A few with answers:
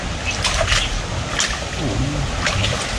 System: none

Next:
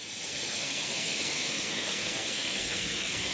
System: codec, SNAC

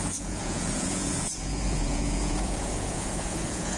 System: vocoder, Vocos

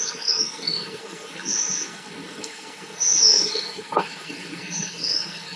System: codec, SNAC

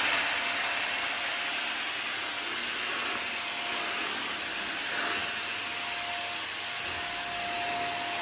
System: none